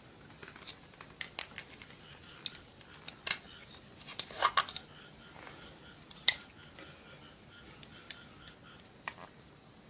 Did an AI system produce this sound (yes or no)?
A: no